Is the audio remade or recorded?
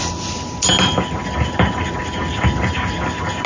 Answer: recorded